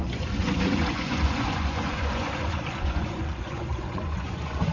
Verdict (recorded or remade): remade